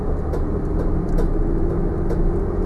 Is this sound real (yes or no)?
yes